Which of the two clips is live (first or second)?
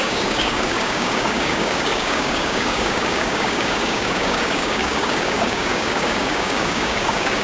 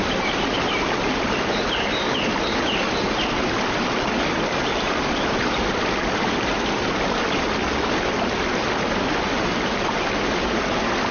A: second